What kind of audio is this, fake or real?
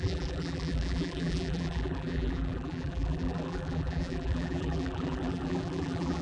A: fake